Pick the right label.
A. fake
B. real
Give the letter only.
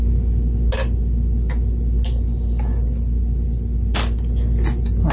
B